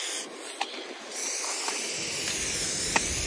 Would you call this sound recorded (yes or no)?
yes